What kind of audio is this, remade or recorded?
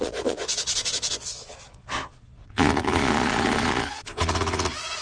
remade